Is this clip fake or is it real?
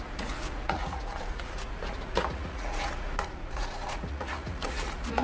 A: fake